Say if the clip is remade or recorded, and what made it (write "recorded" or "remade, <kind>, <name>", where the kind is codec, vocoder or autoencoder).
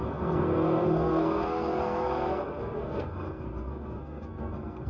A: remade, codec, SNAC